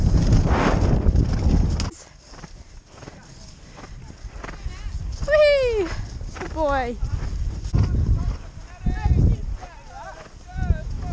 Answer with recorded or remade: recorded